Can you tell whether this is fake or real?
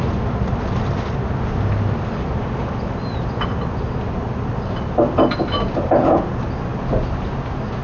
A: real